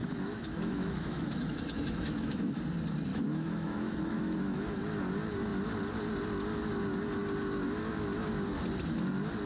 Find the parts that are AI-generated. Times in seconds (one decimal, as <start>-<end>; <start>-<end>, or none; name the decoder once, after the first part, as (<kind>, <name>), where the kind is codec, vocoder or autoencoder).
0.0-2.6 (autoencoder, DAC-VAE); 3.1-5.0